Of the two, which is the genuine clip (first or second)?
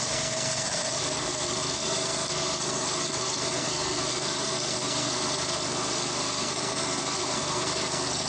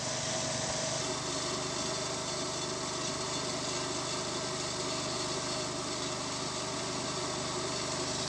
second